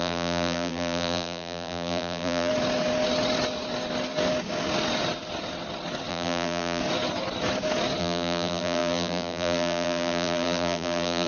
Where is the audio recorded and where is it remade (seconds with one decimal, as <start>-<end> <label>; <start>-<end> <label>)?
0.0-2.5 remade; 2.5-6.1 recorded; 6.1-6.8 remade; 6.8-8.0 recorded; 8.0-11.3 remade